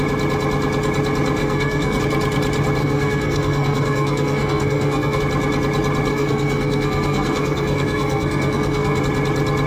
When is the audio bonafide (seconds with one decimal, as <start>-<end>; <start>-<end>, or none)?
0.0-1.4; 2.0-2.8; 5.2-6.1; 9.0-9.7